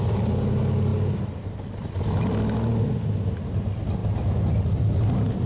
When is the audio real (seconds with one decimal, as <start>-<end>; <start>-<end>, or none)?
0.0-5.5